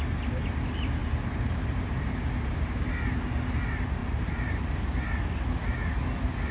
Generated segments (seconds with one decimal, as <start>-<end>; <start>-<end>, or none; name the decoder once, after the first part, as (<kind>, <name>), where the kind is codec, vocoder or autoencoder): 1.0-2.9 (vocoder, BigVGAN v2); 4.0-5.0